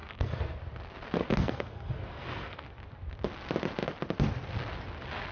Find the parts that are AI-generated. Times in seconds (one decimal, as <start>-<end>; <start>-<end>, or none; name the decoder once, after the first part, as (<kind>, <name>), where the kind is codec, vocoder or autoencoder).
0.0-0.6 (codec, SNAC); 1.2-2.6